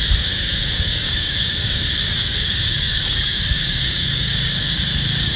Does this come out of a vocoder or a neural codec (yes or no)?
yes